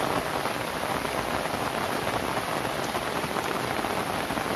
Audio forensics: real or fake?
real